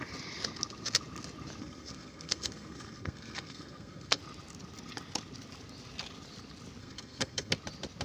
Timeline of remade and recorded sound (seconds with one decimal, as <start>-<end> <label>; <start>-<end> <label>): 0.0-1.6 recorded; 1.6-4.2 remade; 4.2-6.8 recorded; 6.8-7.5 remade; 7.5-8.0 recorded